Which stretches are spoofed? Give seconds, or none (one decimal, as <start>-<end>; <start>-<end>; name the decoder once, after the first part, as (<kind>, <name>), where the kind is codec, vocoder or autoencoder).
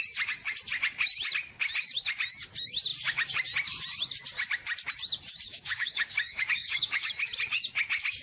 5.5-7.1 (codec, DAC)